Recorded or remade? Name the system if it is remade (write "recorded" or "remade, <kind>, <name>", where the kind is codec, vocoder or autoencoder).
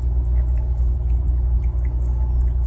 recorded